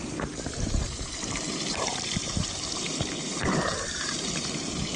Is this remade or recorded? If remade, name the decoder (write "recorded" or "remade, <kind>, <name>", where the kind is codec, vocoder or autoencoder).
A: remade, vocoder, BigVGAN v2